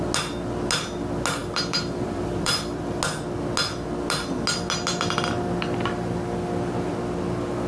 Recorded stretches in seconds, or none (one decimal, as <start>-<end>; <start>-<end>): 0.0-1.4; 3.0-7.7